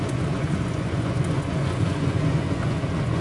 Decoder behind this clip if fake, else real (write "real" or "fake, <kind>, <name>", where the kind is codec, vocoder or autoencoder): fake, vocoder, Vocos